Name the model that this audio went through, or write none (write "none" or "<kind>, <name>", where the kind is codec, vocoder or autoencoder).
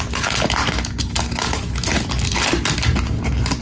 none